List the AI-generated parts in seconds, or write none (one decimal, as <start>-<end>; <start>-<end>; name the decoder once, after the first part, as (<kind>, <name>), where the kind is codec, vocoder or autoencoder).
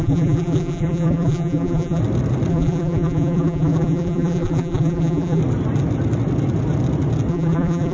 0.0-2.0 (vocoder, BigVGAN v2); 2.5-5.4; 7.3-7.9